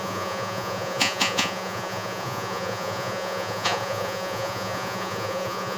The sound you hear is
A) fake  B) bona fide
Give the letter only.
A